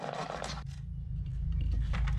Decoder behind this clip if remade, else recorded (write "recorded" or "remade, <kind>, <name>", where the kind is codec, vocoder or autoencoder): recorded